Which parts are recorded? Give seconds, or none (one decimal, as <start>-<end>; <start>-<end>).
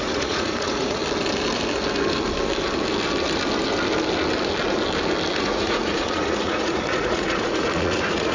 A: 1.0-5.4